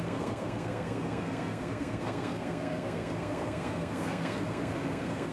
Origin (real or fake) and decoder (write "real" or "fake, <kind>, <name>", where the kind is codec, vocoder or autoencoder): fake, codec, SNAC